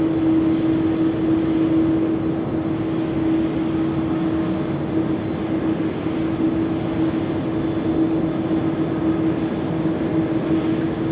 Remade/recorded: recorded